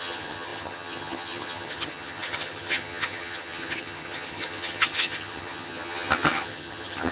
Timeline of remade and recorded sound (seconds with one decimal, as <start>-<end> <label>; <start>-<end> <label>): 0.0-7.1 remade